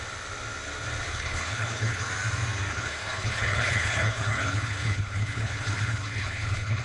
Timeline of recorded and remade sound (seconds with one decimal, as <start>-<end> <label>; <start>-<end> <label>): 0.0-1.1 recorded; 1.1-2.1 remade; 2.1-2.7 recorded; 2.7-6.8 remade